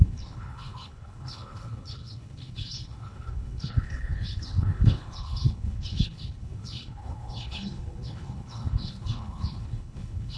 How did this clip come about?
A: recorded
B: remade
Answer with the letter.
B